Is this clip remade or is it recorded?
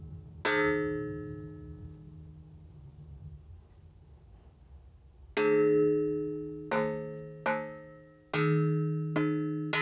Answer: recorded